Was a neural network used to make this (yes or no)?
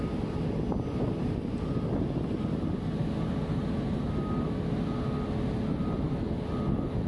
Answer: no